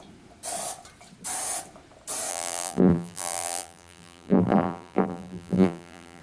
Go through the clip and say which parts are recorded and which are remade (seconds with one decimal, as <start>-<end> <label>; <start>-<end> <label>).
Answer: 0.0-2.3 recorded; 2.3-6.2 remade